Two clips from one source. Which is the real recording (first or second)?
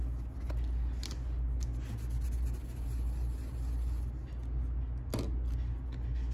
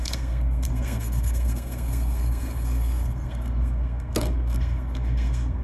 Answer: first